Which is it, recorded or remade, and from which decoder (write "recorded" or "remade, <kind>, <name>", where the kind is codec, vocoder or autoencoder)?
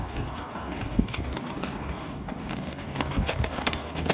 remade, codec, DAC